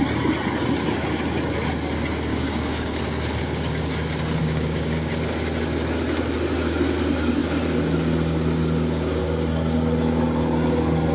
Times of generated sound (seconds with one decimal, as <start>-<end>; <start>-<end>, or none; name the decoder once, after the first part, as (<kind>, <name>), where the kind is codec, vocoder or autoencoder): 2.3-3.0 (codec, DAC); 4.4-5.1